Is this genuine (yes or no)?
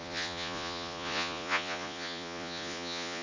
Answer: no